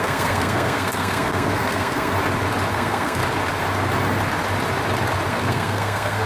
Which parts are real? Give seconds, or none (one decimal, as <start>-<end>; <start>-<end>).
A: 2.1-2.7; 3.2-5.3